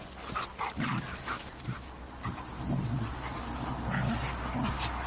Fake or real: real